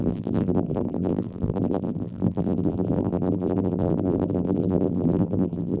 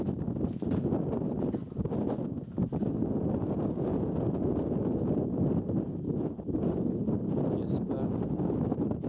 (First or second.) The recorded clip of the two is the second